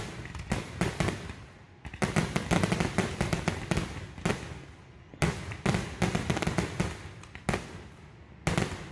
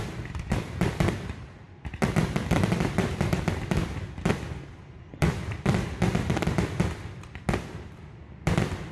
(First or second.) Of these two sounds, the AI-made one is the second